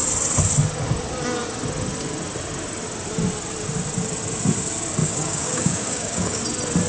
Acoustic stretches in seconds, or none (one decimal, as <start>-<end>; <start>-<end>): 0.0-5.0; 6.4-6.9